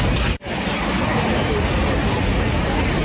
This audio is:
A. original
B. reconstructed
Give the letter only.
A